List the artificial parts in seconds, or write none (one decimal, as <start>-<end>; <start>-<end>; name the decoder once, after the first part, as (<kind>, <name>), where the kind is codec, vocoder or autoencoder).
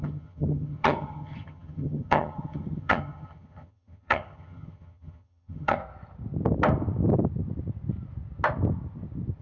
0.0-5.8 (vocoder, HiFi-GAN)